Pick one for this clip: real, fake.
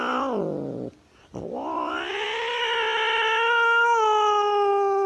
real